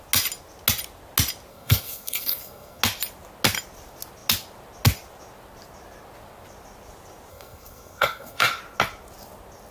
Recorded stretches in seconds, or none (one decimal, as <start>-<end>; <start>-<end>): 0.0-1.5; 2.8-7.3; 8.6-9.7